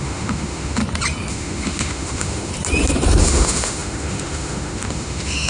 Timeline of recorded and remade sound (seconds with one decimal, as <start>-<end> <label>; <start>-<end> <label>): 0.0-0.8 remade; 0.8-1.3 recorded; 1.3-2.5 remade; 2.5-3.2 recorded; 3.2-5.5 remade

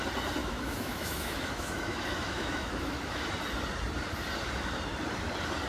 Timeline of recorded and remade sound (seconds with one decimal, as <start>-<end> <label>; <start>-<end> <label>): 0.0-0.4 recorded; 0.4-3.2 remade; 3.2-5.7 recorded

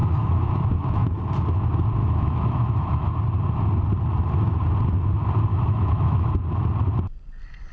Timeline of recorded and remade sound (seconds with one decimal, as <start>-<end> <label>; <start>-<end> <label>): 0.0-1.2 remade; 1.2-2.0 recorded; 2.0-3.1 remade; 3.1-5.5 recorded; 5.5-6.3 remade; 6.3-7.7 recorded

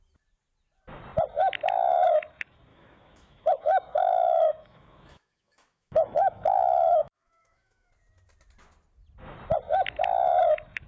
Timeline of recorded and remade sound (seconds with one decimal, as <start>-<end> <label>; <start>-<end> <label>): 0.0-2.7 recorded; 2.7-7.9 remade; 7.9-10.9 recorded

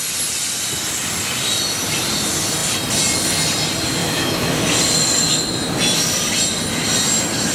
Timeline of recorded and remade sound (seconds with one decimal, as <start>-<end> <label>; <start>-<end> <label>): 0.0-4.0 recorded; 4.0-4.6 remade; 4.6-7.5 recorded